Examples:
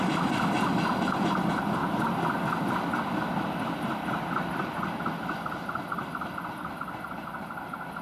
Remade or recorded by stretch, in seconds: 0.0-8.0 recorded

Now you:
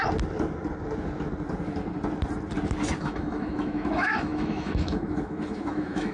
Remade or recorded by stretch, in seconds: 0.0-3.0 recorded; 3.0-6.1 remade

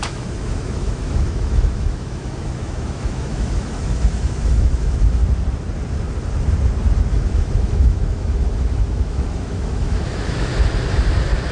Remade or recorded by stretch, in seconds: 0.0-5.2 remade; 5.2-7.1 recorded; 7.1-10.5 remade; 10.5-11.5 recorded

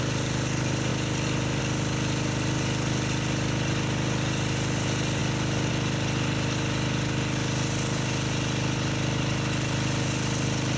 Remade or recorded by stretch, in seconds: 0.0-10.8 recorded

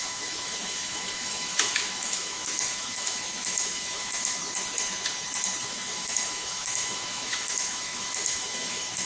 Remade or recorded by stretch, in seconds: 0.0-4.4 remade; 4.4-5.6 recorded; 5.6-9.1 remade

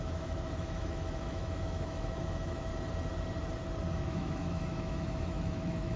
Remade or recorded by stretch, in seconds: 0.0-2.7 remade; 2.7-4.0 recorded; 4.0-6.0 remade

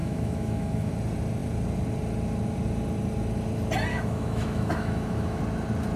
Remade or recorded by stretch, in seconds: 0.0-0.9 remade; 0.9-3.9 recorded; 3.9-5.4 remade; 5.4-6.0 recorded